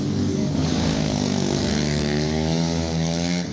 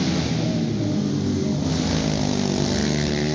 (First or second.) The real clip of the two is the second